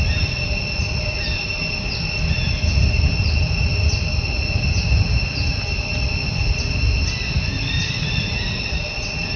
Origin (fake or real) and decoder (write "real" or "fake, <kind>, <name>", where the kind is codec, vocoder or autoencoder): real